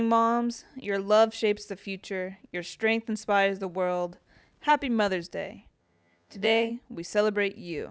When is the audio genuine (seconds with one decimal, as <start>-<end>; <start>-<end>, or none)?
0.0-5.8; 6.7-7.9